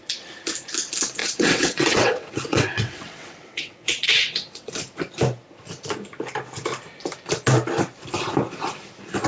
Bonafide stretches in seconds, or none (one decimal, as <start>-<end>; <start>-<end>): 0.0-1.2; 4.7-9.3